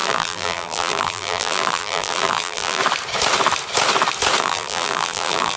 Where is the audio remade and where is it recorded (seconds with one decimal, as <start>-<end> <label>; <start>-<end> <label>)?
0.0-2.8 remade; 2.8-4.4 recorded; 4.4-5.6 remade